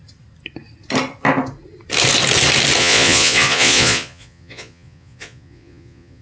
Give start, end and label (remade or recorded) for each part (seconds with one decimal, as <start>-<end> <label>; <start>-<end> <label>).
0.0-2.8 recorded; 2.8-6.2 remade